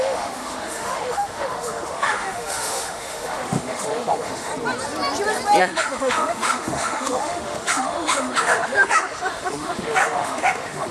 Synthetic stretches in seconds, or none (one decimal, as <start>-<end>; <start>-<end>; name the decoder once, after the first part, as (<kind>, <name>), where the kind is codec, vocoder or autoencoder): 0.0-4.5 (autoencoder, DAC-VAE); 5.6-10.9